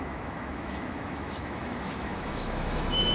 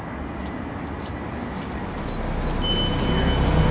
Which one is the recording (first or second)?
second